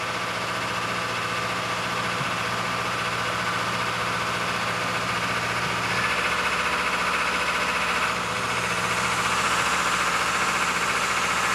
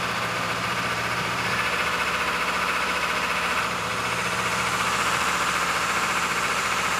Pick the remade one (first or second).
second